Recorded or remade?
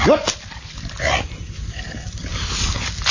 recorded